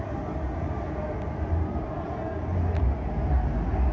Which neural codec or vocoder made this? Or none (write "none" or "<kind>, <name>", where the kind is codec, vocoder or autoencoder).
none